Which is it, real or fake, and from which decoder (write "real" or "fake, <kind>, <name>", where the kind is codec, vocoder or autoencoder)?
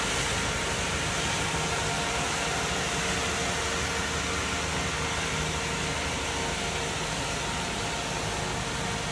real